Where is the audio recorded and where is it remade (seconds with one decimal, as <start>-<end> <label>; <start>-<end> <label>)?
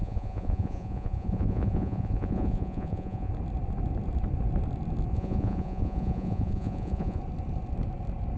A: 0.0-3.3 remade; 3.3-5.1 recorded; 5.1-7.2 remade; 7.2-8.4 recorded